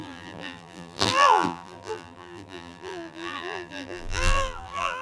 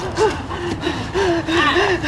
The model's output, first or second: first